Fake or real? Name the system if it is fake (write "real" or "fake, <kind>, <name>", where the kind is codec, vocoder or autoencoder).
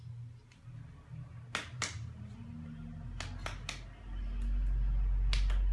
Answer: real